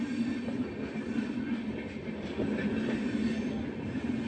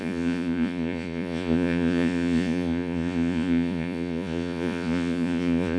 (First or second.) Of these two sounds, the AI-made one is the second